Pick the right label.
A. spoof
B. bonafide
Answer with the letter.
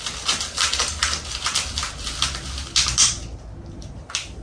B